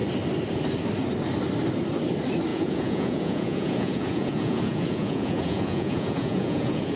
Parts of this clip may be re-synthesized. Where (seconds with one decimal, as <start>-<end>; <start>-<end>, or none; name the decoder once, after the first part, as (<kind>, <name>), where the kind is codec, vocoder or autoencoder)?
2.5-7.0 (vocoder, Vocos)